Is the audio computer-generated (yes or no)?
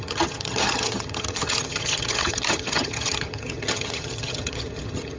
yes